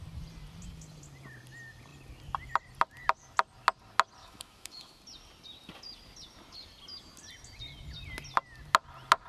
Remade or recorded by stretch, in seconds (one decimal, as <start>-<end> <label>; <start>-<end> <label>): 0.0-4.2 recorded; 4.2-5.0 remade; 5.0-9.3 recorded